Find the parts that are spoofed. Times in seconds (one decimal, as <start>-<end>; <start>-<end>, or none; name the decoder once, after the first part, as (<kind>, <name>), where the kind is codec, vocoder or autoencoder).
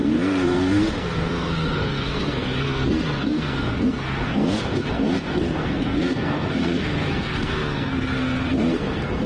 0.0-9.3 (codec, SNAC)